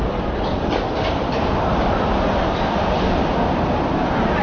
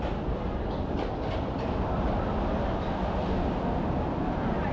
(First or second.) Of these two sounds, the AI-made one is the first